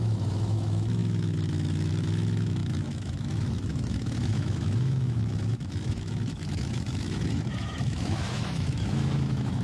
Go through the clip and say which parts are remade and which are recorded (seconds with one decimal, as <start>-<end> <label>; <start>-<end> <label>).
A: 0.0-9.6 remade